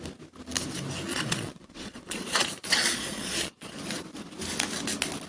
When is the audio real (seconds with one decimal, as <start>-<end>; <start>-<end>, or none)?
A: 0.0-1.1; 3.7-5.3

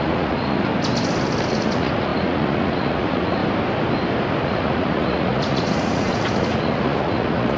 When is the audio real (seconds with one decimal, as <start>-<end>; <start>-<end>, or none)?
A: 0.7-1.5; 3.4-4.4

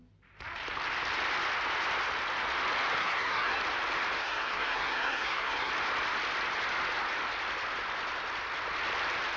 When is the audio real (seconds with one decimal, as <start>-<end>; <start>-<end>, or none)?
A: 0.0-3.0; 3.6-4.2; 5.7-9.4

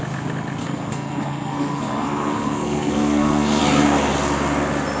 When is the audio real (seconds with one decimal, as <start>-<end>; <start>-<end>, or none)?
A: 0.0-0.6; 3.6-5.0

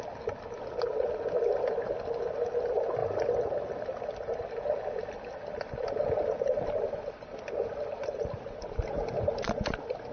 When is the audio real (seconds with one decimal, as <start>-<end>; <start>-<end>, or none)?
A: 0.0-10.1

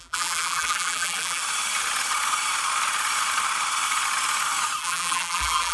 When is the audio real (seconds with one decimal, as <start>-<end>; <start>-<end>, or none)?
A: 1.4-4.8

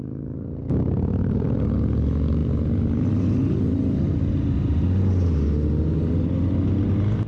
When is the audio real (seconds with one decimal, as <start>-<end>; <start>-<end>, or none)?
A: 0.0-7.3

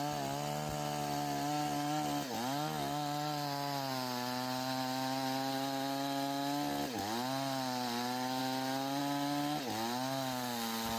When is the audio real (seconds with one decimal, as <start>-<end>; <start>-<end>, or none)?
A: 0.0-11.0